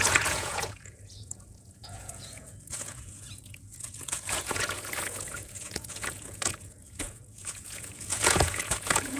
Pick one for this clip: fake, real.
fake